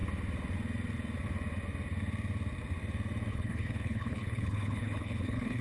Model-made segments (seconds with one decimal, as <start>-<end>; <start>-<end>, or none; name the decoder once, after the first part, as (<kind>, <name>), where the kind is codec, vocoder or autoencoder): 3.3-5.6 (codec, HILCodec)